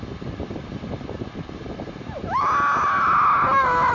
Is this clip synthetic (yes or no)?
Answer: no